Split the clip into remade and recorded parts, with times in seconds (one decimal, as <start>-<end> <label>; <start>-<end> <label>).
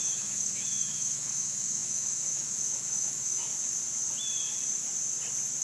0.0-3.5 remade; 3.5-5.6 recorded